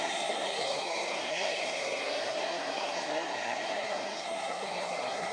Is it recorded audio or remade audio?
remade